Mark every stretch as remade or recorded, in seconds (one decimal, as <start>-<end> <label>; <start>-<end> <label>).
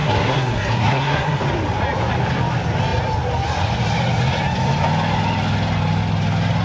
0.0-1.4 remade; 1.4-6.6 recorded